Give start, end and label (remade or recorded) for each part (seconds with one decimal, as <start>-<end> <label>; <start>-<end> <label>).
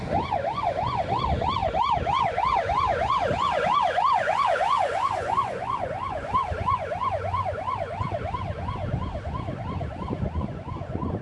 0.0-1.6 remade; 1.6-2.2 recorded; 2.2-11.2 remade